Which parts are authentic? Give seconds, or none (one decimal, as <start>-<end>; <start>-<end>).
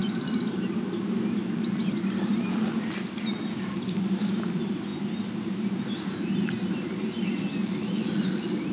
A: 0.0-8.7